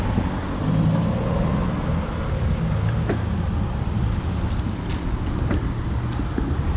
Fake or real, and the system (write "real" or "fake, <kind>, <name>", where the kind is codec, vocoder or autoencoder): real